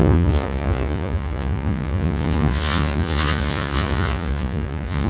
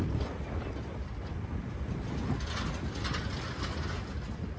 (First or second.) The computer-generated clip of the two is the first